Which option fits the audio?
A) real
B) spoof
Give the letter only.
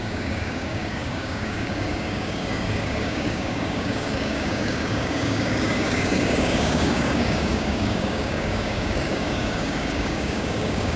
B